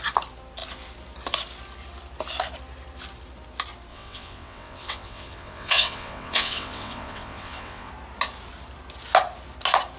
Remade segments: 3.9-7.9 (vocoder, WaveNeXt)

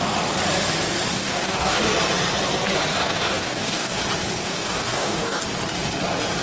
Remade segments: 1.1-1.8 (codec, DAC); 2.9-4.0; 4.4-5.4

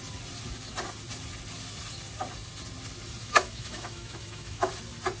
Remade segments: 3.2-4.7 (autoencoder, DAC-VAE)